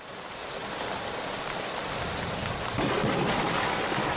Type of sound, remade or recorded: recorded